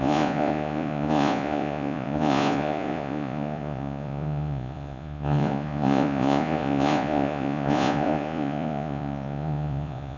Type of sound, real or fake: fake